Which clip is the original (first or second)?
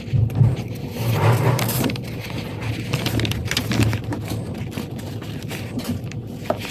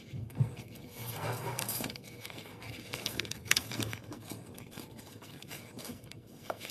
first